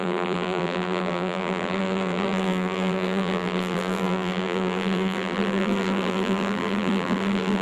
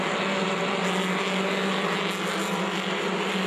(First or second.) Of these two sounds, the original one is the second